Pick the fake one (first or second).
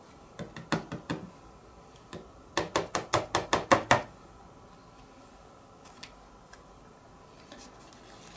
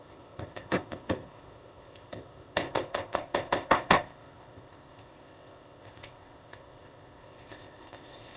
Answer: second